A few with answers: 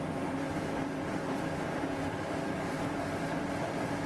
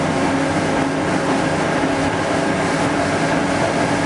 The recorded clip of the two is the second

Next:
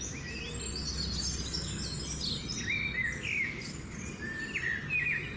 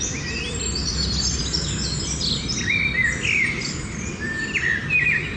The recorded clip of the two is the first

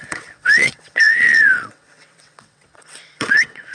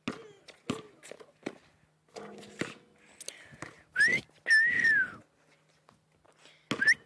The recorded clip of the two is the second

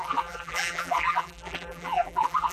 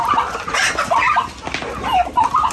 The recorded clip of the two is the second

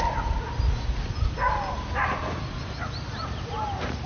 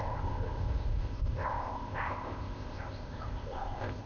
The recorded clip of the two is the first